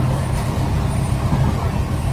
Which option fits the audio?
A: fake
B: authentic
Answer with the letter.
A